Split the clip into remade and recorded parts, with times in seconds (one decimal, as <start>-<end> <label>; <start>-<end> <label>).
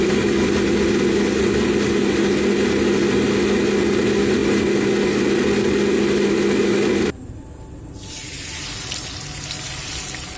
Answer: 0.0-10.4 recorded